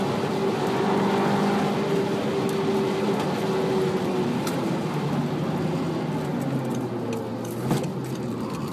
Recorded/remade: recorded